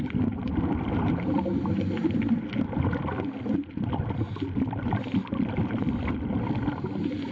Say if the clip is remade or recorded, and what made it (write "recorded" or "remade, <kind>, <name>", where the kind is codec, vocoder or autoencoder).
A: recorded